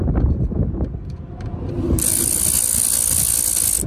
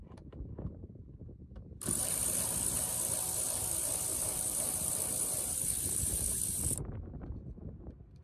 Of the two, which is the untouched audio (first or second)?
first